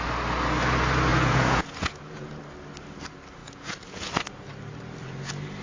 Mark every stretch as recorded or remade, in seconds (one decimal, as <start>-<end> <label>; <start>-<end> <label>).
0.0-1.1 recorded; 1.1-2.4 remade; 2.4-3.4 recorded; 3.4-4.1 remade; 4.1-5.6 recorded